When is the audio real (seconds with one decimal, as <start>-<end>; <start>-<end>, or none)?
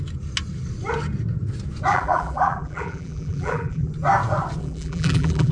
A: 0.0-1.9; 3.9-4.6